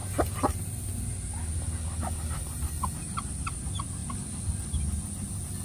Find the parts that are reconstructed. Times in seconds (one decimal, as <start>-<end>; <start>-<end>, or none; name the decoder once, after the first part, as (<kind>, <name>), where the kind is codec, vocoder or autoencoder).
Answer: none